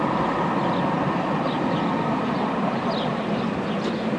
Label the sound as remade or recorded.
recorded